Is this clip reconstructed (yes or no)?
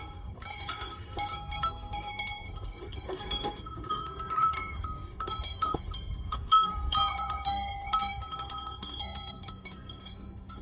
yes